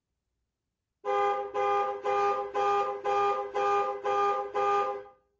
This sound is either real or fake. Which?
real